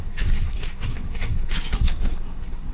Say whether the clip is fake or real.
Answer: fake